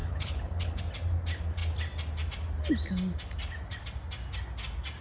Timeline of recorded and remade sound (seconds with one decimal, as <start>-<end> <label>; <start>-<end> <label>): 0.0-0.8 remade; 0.8-5.0 recorded